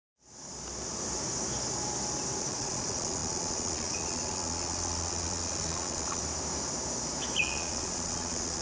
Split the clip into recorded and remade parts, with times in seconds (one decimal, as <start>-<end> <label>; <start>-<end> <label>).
0.0-2.4 recorded; 2.4-6.2 remade; 6.2-7.4 recorded; 7.4-8.6 remade